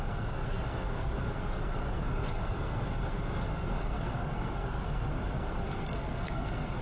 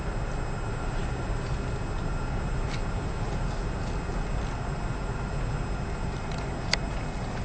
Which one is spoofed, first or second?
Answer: first